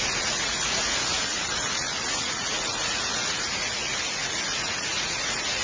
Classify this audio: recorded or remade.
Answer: remade